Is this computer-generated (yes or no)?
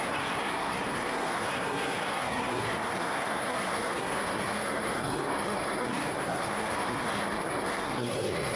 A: yes